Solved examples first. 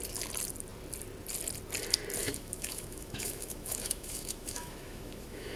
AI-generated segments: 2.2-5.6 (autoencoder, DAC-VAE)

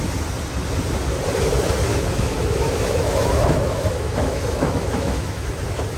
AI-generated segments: 1.9-5.5 (autoencoder, DAC-VAE)

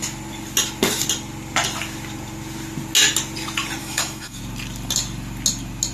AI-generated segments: 3.8-4.4 (autoencoder, DAC-VAE)

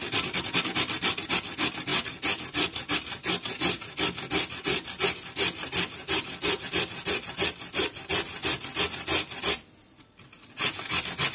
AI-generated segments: none

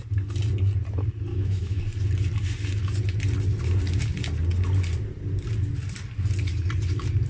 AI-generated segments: 1.3-1.8 (autoencoder, DAC-VAE)

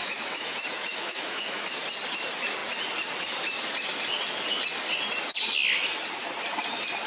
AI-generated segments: 0.0-1.7 (autoencoder, DAC-VAE)

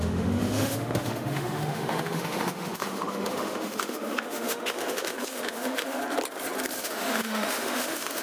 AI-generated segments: 0.0-6.0 (autoencoder, DAC-VAE); 6.8-8.2

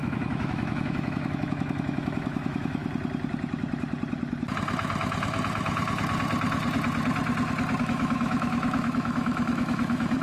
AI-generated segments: 0.0-2.8 (autoencoder, DAC-VAE); 7.8-10.2